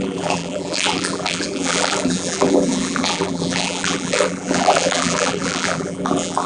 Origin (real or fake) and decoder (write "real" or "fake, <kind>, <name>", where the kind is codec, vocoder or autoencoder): fake, vocoder, BigVGAN v2